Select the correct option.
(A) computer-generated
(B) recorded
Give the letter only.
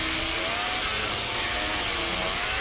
B